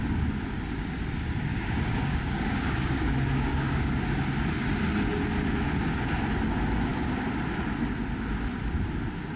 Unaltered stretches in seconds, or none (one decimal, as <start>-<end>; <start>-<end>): 0.0-1.5; 3.9-9.4

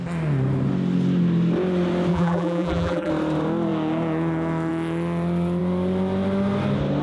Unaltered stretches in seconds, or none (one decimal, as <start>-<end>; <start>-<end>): 0.0-2.1; 3.1-7.0